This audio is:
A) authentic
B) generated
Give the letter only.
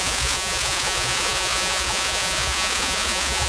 B